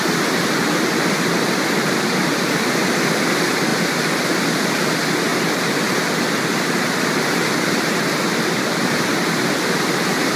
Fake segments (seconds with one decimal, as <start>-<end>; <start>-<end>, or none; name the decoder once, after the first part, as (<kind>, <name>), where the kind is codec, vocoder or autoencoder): none